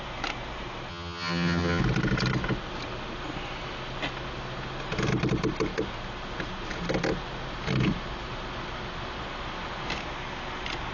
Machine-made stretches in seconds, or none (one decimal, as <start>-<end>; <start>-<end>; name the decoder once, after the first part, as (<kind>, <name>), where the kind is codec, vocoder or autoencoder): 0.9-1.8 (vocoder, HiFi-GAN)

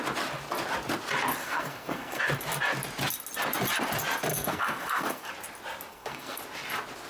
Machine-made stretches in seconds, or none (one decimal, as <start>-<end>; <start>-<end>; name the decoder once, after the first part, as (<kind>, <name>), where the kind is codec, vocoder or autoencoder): 1.4-2.2 (codec, SNAC); 4.3-5.3; 5.9-6.4

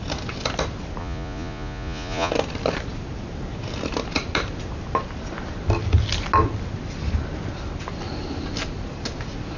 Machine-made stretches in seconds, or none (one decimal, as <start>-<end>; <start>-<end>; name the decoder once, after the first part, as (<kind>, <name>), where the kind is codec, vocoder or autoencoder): 1.0-2.3 (vocoder, Vocos)

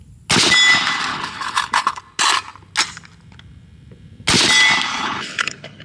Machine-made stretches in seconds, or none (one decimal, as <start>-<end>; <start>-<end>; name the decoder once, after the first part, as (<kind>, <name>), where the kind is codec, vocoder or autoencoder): 1.1-2.0 (codec, HILCodec); 4.9-5.8

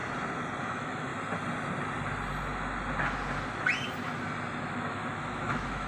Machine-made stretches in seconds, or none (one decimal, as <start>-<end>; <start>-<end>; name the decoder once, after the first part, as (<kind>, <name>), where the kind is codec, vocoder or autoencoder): 0.6-1.1 (autoencoder, DAC-VAE); 4.6-5.9

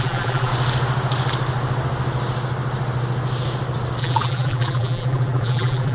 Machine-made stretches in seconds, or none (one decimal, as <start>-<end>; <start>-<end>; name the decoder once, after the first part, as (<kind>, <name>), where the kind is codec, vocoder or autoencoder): 0.0-0.5 (vocoder, BigVGAN v2); 4.0-5.9

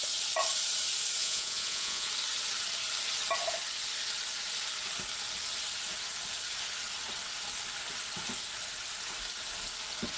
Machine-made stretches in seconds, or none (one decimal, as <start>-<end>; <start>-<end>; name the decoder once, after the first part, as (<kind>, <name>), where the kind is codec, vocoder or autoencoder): 1.2-2.1 (vocoder, Vocos)